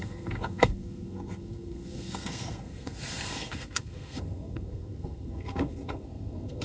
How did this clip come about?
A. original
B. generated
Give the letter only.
B